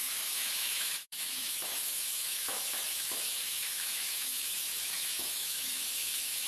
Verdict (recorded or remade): remade